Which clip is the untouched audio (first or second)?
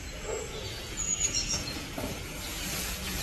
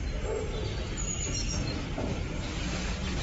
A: second